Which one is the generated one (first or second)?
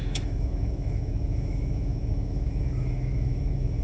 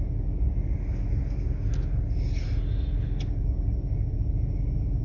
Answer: first